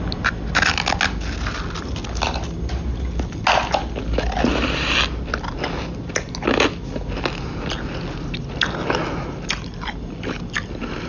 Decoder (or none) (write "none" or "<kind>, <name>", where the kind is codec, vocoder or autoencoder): none